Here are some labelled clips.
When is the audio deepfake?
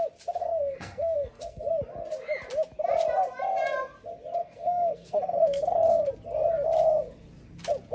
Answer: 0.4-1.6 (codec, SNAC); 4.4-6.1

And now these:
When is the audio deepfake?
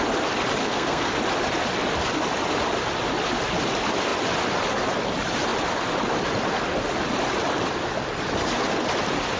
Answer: 0.6-1.1 (codec, SNAC)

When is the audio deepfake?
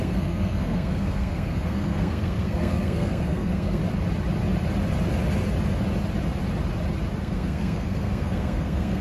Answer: 0.0-3.8 (codec, SNAC); 7.2-9.0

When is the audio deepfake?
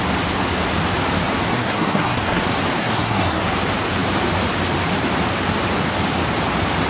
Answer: 1.5-2.4 (codec, SNAC); 2.8-3.4